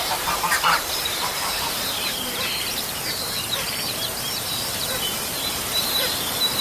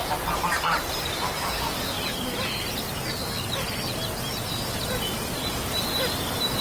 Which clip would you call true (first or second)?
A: second